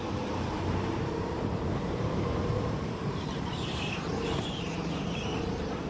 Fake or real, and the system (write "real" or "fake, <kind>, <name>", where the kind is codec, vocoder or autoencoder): fake, vocoder, BigVGAN v2